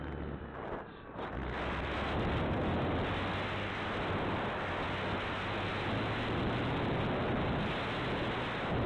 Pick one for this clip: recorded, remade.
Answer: recorded